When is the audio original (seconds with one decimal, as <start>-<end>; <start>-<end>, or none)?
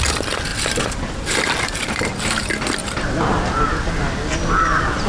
0.0-0.5; 3.4-5.1